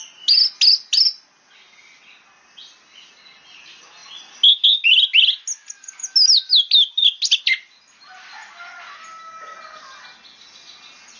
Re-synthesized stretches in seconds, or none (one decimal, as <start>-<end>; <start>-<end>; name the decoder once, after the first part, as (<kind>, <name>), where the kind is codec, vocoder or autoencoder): none